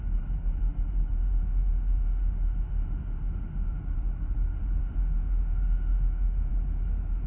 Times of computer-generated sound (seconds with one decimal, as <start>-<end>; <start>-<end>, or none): 1.2-3.8; 4.8-6.5